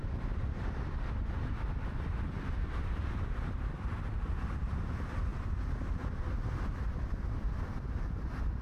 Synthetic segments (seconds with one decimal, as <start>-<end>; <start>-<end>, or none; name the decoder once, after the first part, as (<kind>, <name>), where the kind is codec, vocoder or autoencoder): 0.0-5.3 (vocoder, BigVGAN v2); 6.7-7.7